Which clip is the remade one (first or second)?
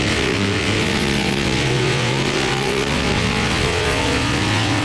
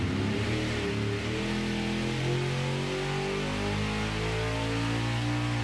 first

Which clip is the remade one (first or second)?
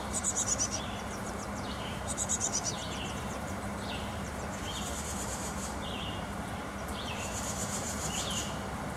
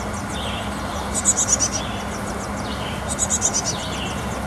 first